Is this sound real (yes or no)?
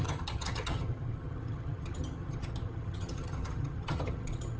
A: no